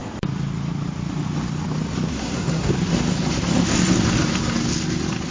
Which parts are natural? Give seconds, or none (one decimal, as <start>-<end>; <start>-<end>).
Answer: 0.0-2.1; 2.7-5.3